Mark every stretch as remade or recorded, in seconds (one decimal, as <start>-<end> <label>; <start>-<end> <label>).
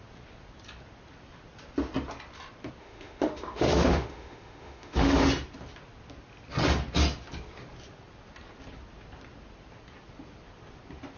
0.0-2.8 recorded; 2.8-5.2 remade; 5.2-11.2 recorded